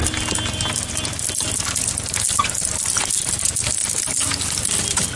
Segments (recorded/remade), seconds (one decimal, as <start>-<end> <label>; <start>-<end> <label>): 0.0-5.2 recorded